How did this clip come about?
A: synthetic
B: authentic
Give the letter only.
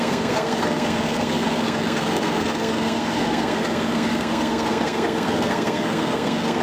A